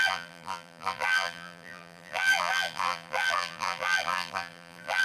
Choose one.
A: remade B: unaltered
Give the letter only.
A